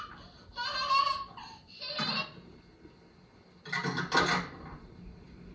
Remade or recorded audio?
recorded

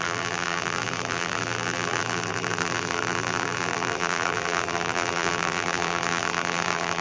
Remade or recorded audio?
remade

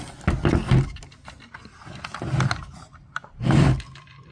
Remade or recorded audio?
recorded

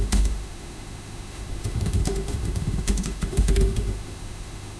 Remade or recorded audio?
remade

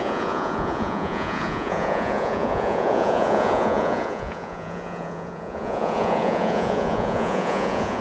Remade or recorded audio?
remade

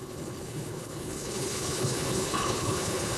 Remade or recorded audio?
remade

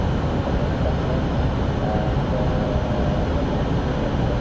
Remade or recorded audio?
recorded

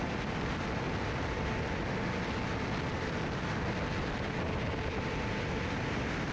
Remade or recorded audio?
recorded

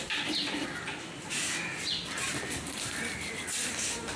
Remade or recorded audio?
recorded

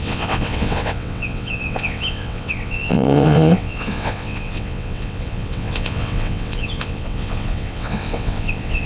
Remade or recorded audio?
remade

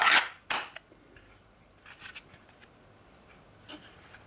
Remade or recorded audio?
recorded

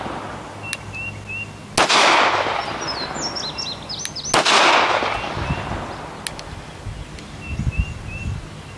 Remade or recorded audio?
recorded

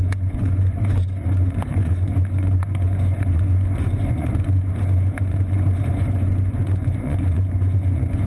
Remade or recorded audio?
remade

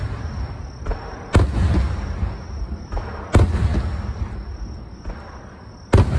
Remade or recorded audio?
recorded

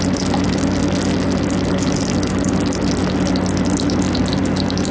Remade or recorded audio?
recorded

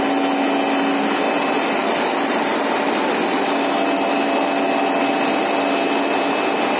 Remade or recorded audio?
recorded